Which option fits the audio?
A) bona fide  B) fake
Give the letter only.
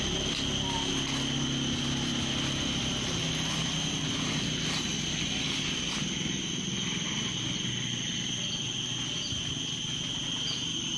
A